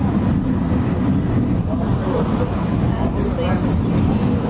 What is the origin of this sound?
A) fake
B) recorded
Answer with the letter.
B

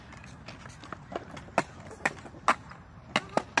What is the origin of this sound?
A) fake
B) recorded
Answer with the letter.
B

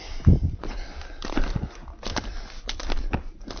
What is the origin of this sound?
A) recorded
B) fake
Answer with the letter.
A